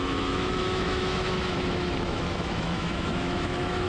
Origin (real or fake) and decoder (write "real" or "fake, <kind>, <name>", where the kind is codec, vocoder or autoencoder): fake, autoencoder, DAC-VAE